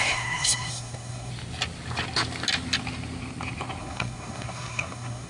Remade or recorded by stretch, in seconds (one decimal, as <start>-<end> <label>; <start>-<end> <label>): 0.0-1.3 remade; 1.3-3.8 recorded; 3.8-5.3 remade